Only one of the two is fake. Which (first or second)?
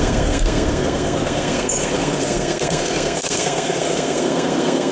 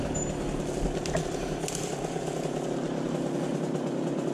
first